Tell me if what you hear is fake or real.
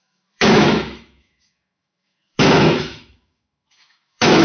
fake